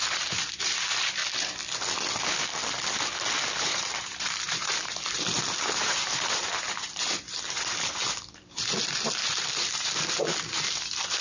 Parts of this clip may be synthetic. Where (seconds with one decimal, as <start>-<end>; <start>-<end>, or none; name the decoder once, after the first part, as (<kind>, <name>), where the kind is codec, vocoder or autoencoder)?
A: 0.0-1.2 (vocoder, BigVGAN v2); 3.6-11.2